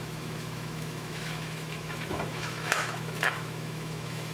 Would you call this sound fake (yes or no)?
yes